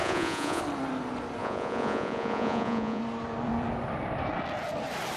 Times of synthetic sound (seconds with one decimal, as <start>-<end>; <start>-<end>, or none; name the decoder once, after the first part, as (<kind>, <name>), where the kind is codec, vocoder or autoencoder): 0.0-0.6 (vocoder, Vocos); 1.4-3.0